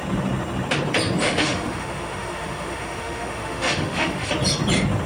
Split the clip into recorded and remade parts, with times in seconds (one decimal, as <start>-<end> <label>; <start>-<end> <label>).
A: 0.0-1.2 recorded; 1.2-4.3 remade; 4.3-5.1 recorded